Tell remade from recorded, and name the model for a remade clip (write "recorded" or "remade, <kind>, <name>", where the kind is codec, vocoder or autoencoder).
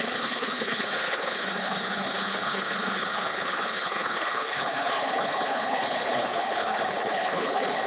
remade, codec, HILCodec